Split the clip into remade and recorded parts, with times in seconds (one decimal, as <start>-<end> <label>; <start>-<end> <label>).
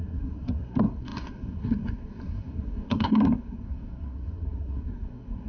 0.0-5.5 remade